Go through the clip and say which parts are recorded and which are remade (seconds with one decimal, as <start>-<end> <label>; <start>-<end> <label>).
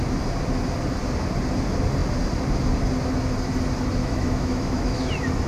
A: 0.0-4.0 recorded; 4.0-5.1 remade; 5.1-5.5 recorded